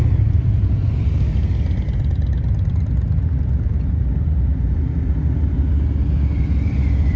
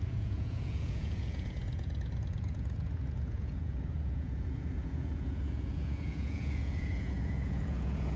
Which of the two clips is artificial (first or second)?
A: second